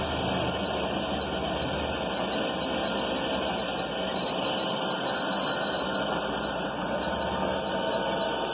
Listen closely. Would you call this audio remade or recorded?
recorded